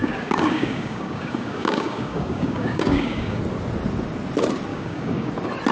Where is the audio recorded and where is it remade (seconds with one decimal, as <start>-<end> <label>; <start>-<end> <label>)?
0.0-3.4 remade; 3.4-4.7 recorded; 4.7-5.3 remade; 5.3-5.7 recorded